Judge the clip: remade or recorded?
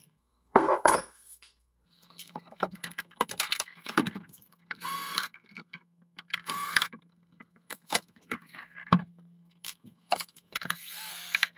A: remade